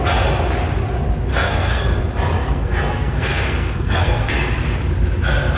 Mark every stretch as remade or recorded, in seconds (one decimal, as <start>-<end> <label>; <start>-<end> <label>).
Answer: 0.0-1.3 recorded; 1.3-2.0 remade; 2.0-2.4 recorded; 2.4-4.3 remade; 4.3-5.6 recorded